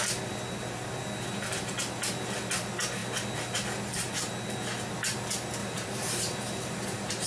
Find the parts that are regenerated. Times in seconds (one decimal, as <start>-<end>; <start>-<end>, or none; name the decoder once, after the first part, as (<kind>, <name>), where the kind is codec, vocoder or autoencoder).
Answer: 5.6-7.3 (vocoder, BigVGAN v2)